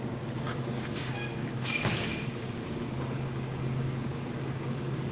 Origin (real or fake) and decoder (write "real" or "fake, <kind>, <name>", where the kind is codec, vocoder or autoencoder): fake, codec, DAC